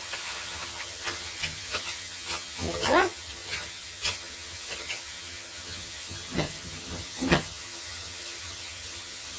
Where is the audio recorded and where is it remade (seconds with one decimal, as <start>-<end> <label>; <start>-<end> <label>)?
0.0-9.4 remade